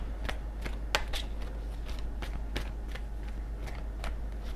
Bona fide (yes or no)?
yes